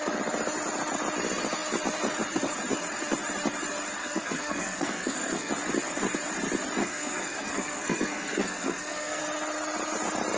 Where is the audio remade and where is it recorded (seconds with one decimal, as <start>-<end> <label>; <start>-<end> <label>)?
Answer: 0.0-4.0 recorded; 4.0-5.5 remade; 5.5-6.8 recorded; 6.8-9.2 remade; 9.2-10.4 recorded